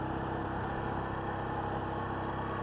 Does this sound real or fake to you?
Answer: real